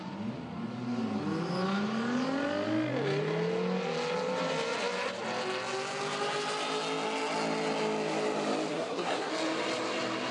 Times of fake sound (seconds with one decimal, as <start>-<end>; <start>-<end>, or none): 8.7-9.3